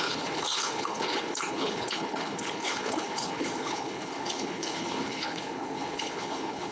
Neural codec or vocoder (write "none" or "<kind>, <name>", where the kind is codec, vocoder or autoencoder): codec, HILCodec